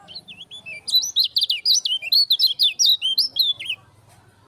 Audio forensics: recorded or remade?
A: recorded